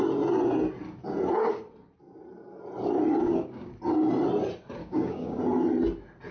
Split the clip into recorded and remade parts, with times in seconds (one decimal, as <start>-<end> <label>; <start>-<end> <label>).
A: 0.0-3.2 recorded; 3.2-3.7 remade; 3.7-4.8 recorded; 4.8-5.4 remade; 5.4-6.3 recorded